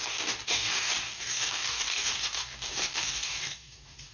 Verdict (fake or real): fake